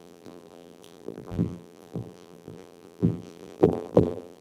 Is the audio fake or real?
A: fake